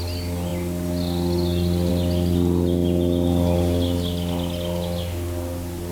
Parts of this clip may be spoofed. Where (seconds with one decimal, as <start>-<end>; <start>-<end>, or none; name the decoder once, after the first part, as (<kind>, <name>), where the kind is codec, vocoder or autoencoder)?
none